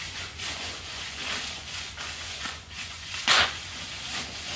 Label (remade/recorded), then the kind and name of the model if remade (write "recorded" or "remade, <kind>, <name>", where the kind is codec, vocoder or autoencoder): remade, vocoder, Vocos